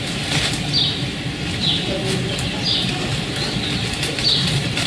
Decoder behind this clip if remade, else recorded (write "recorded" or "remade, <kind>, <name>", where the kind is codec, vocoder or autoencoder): recorded